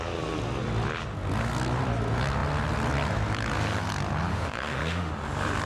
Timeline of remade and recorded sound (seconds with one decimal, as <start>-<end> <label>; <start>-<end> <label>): 0.0-4.3 recorded; 4.3-5.1 remade; 5.1-5.7 recorded